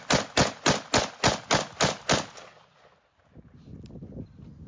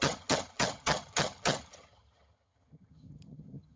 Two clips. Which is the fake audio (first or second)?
second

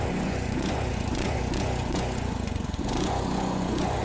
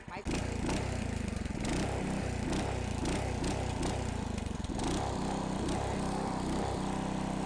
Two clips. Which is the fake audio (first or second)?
first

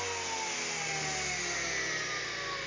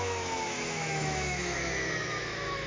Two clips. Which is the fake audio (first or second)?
second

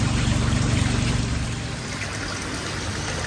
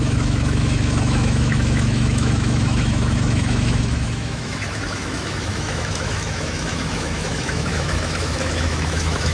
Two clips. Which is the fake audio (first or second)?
second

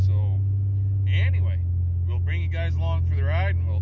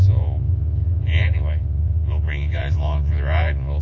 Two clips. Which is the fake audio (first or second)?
second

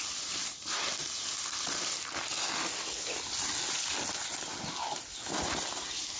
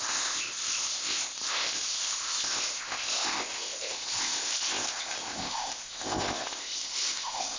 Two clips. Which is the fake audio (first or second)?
second